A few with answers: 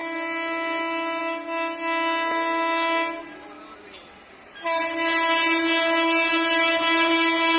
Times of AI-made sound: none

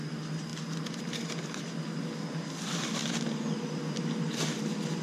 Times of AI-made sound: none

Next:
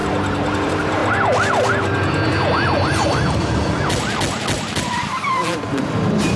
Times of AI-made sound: 0.6-1.0 (vocoder, BigVGAN v2); 4.8-6.4